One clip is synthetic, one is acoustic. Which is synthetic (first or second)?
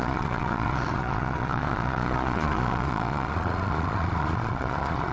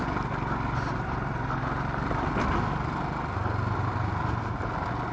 first